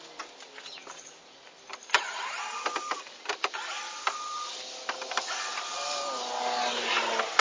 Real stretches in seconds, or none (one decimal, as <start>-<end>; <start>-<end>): 0.0-0.8; 1.7-7.4